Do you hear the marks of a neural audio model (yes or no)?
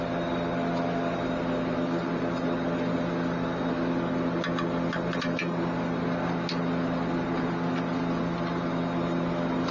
no